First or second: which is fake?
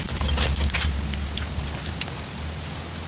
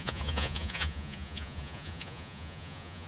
second